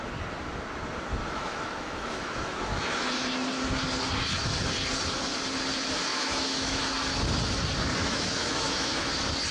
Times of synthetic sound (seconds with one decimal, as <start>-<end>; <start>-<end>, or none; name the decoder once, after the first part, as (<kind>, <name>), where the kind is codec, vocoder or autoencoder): 1.2-3.1 (autoencoder, DAC-VAE); 6.1-6.8; 8.0-9.1